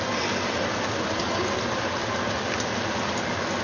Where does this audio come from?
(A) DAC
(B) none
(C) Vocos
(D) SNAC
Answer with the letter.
B